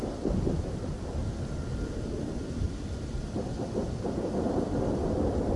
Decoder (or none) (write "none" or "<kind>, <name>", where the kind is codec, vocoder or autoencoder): vocoder, BigVGAN v2